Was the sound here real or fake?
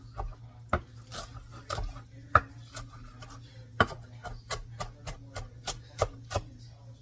real